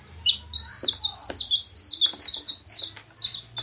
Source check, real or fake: real